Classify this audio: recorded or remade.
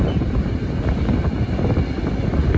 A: recorded